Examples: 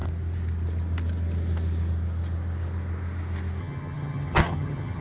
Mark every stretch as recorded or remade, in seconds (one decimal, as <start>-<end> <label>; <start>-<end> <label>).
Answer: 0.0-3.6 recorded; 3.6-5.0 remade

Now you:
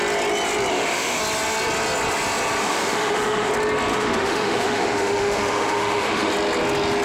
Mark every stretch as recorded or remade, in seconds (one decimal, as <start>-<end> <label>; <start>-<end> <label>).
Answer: 0.0-0.7 recorded; 0.7-1.2 remade; 1.2-2.6 recorded; 2.6-3.5 remade; 3.5-3.9 recorded; 3.9-6.3 remade; 6.3-7.0 recorded

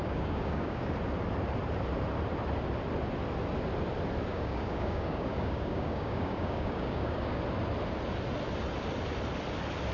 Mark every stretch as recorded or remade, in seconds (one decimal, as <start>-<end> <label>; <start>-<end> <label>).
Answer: 0.0-0.9 remade; 0.9-4.3 recorded; 4.3-7.4 remade; 7.4-9.9 recorded

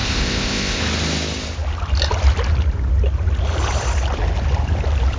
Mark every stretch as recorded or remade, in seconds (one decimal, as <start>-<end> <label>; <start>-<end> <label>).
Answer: 0.0-0.8 remade; 0.8-5.2 recorded

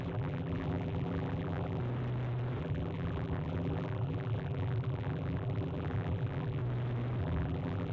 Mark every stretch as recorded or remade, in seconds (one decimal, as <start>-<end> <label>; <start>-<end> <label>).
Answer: 0.0-1.8 remade; 1.8-2.6 recorded; 2.6-6.6 remade; 6.6-7.2 recorded; 7.2-7.9 remade

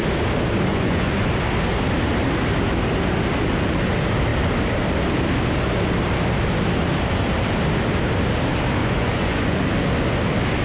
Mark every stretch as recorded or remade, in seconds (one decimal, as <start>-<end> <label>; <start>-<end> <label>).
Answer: 0.0-0.7 recorded; 0.7-1.3 remade; 1.3-8.8 recorded; 8.8-9.6 remade; 9.6-10.6 recorded